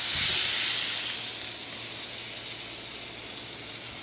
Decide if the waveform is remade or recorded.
recorded